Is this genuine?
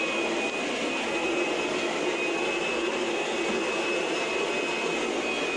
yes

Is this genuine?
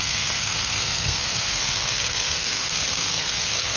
no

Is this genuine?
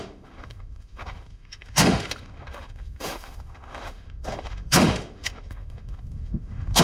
no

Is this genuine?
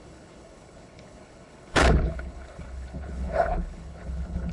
no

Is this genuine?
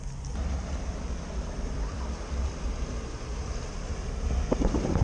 no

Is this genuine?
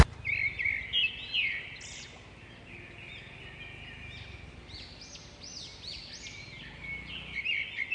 yes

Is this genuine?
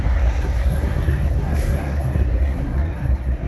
no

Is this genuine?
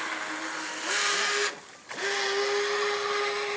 yes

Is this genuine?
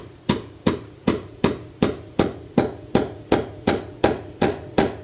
no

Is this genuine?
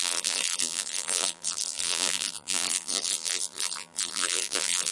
no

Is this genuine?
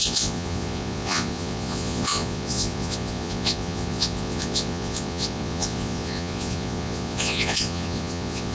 no